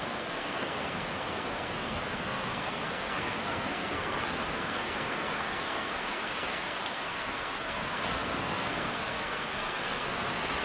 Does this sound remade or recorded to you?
remade